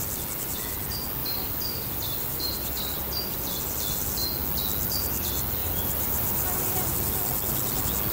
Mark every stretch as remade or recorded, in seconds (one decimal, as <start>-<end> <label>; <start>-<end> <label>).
0.0-1.2 recorded; 1.2-3.6 remade; 3.6-5.6 recorded; 5.6-6.9 remade; 6.9-8.1 recorded